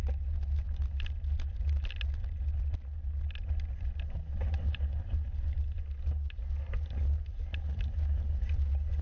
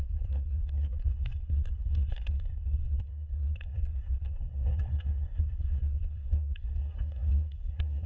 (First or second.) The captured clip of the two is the first